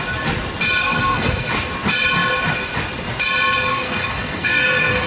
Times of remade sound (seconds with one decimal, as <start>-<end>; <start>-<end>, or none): 0.8-1.5; 3.7-5.1